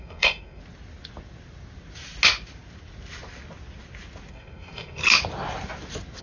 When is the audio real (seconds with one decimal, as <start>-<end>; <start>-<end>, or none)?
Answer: 0.6-4.3; 5.0-6.2